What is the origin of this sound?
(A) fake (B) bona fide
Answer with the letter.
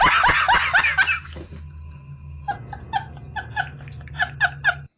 B